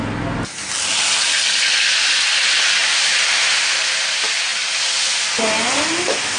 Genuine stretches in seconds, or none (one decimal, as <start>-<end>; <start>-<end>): 0.0-6.4